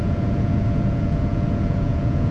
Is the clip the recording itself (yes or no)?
no